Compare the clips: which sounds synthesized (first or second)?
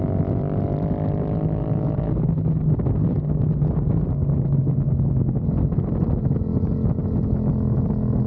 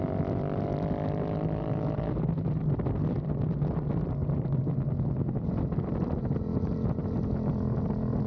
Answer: second